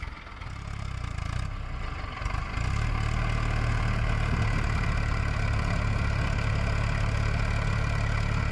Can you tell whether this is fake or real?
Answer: real